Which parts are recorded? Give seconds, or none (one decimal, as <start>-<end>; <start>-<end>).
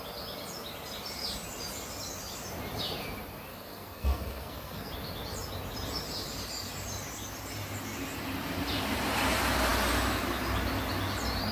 0.0-3.5; 4.9-11.5